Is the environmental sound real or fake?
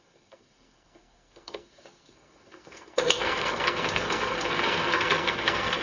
fake